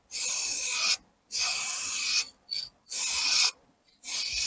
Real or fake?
real